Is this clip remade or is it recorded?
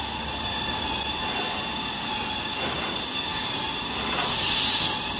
recorded